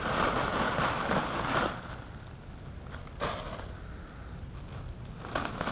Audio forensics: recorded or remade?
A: recorded